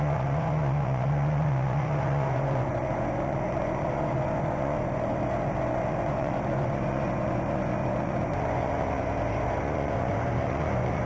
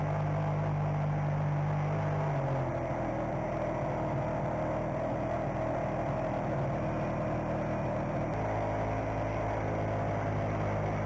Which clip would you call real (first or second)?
second